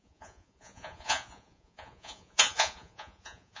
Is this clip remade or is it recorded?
remade